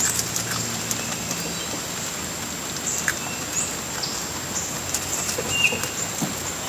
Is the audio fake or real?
real